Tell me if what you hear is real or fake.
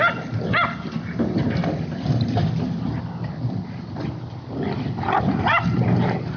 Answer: real